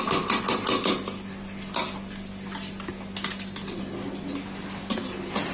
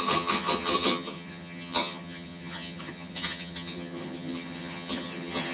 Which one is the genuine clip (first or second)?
first